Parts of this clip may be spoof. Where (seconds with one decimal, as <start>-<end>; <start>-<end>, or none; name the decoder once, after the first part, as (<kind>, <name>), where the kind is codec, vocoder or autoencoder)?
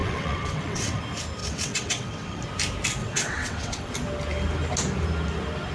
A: 0.0-1.0 (vocoder, WaveNeXt); 1.4-2.4; 3.0-3.9